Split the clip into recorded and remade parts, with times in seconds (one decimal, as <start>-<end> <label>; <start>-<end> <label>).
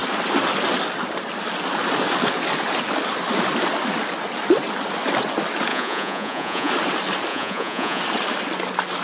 0.0-5.7 recorded; 5.7-6.7 remade; 6.7-7.3 recorded; 7.3-8.0 remade; 8.0-9.0 recorded